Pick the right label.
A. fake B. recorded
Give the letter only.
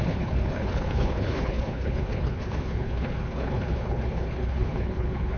A